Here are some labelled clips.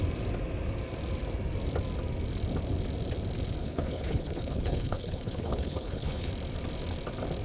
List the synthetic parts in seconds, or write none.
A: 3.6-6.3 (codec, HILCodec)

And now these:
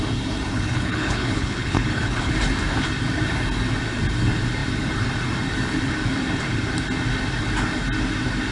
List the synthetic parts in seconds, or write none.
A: 0.5-2.3 (codec, HILCodec)

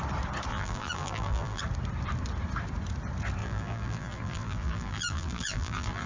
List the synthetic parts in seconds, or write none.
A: 0.5-1.6 (vocoder, BigVGAN v2); 3.4-6.1

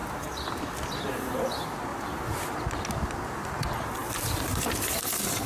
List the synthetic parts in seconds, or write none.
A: 1.9-2.5 (vocoder, BigVGAN v2)

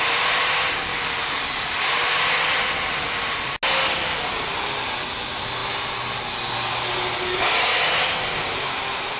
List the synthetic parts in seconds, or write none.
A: none